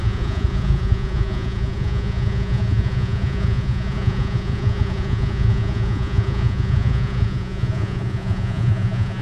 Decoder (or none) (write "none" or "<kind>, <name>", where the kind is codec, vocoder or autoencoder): vocoder, Vocos